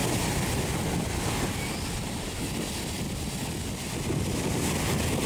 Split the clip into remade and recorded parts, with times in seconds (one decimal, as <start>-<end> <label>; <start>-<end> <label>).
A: 0.0-5.3 recorded